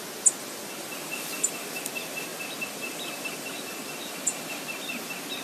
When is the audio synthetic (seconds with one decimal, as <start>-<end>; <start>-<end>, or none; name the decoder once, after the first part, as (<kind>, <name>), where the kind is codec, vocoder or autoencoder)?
0.8-1.9 (vocoder, BigVGAN v2); 2.3-4.6